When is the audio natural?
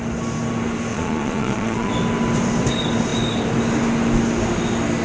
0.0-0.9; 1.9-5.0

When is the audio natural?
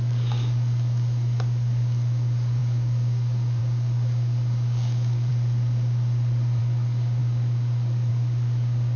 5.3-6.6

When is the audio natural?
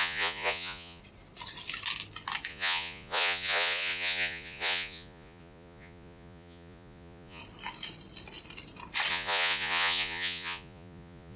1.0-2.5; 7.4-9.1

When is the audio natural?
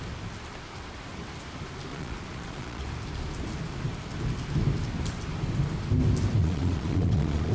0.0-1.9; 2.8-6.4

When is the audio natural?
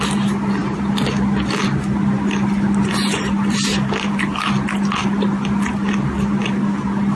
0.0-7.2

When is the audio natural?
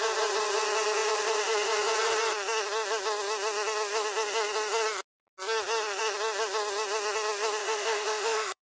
0.0-7.6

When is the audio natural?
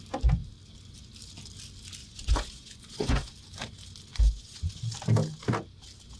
0.0-2.0; 3.3-4.1; 4.7-6.2